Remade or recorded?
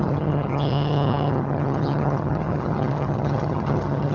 remade